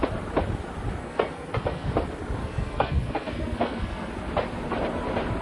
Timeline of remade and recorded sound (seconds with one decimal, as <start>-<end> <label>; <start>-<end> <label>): 0.0-1.0 recorded; 1.0-1.9 remade; 1.9-2.4 recorded; 2.4-4.1 remade; 4.1-5.4 recorded